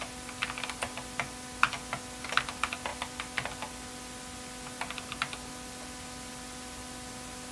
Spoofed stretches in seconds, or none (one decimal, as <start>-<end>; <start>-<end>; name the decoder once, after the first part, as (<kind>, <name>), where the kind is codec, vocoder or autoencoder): none